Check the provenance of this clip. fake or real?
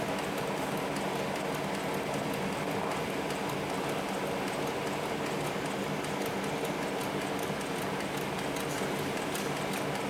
real